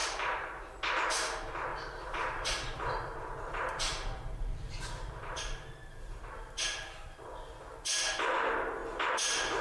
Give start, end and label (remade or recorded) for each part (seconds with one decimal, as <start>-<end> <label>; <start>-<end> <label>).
0.0-0.7 remade; 0.7-1.7 recorded; 1.7-5.4 remade; 5.4-9.6 recorded